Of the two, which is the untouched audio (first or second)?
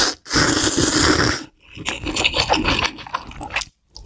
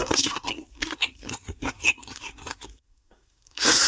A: first